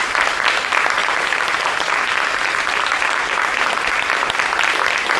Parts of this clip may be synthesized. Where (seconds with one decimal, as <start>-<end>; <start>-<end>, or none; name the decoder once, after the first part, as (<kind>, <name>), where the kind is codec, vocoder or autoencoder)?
1.0-4.1 (vocoder, BigVGAN v2)